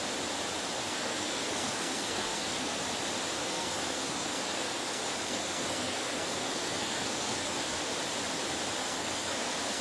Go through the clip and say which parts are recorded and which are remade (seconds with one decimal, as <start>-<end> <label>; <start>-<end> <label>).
0.0-0.8 recorded; 0.8-2.8 remade; 2.8-3.4 recorded; 3.4-7.8 remade; 7.8-8.8 recorded; 8.8-9.8 remade